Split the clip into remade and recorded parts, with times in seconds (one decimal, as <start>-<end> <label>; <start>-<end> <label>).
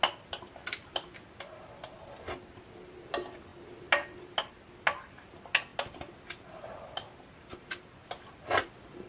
0.0-9.1 recorded